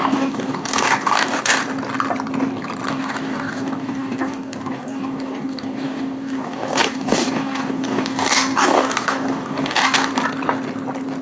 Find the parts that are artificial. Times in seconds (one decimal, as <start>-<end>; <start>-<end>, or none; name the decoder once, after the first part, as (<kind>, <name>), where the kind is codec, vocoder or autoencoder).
0.0-1.6 (codec, DAC); 2.9-10.1

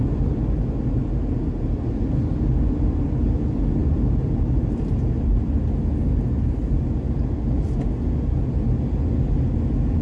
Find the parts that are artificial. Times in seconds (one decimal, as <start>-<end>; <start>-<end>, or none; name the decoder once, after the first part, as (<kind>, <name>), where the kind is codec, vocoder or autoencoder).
none

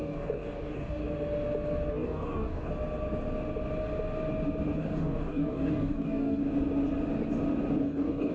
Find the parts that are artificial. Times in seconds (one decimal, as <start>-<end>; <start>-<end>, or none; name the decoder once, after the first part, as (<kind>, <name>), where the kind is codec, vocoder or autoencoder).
0.0-1.0 (codec, DAC); 1.9-2.7; 4.8-6.4; 7.8-8.3

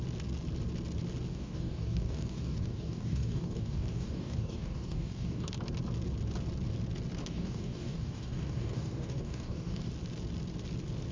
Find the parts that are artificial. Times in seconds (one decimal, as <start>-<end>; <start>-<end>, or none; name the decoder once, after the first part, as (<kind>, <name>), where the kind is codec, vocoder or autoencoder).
1.3-5.5 (codec, DAC); 7.2-9.9

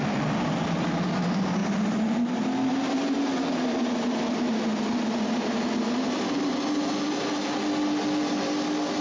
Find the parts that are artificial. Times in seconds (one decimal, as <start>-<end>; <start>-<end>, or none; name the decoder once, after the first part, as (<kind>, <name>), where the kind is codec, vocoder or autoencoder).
none

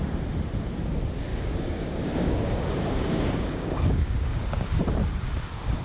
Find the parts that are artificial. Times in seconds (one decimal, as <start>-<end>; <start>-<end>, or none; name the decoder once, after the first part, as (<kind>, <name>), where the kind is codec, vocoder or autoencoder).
1.3-4.8 (codec, DAC)